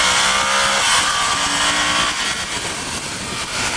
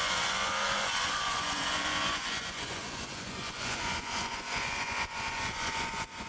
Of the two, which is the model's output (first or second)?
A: second